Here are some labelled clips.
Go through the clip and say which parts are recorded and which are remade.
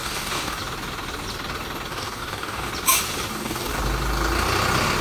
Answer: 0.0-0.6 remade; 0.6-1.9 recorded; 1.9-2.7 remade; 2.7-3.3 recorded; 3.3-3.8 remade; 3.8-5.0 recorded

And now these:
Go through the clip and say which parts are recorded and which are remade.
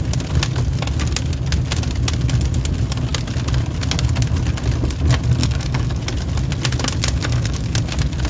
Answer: 0.0-5.4 recorded; 5.4-6.0 remade; 6.0-7.2 recorded; 7.2-7.8 remade; 7.8-8.3 recorded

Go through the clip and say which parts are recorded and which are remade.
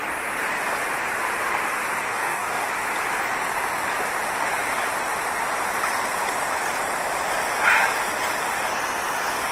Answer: 0.0-2.1 recorded; 2.1-2.7 remade; 2.7-9.5 recorded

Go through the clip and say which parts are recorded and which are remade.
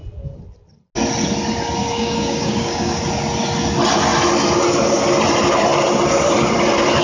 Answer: 0.0-1.8 recorded; 1.8-3.0 remade; 3.0-7.0 recorded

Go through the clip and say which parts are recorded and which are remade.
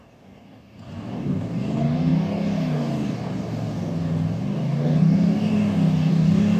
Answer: 0.0-6.6 remade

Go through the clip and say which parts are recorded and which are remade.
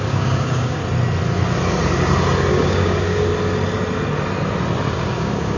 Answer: 0.0-0.8 remade; 0.8-2.5 recorded; 2.5-3.3 remade; 3.3-4.9 recorded; 4.9-5.6 remade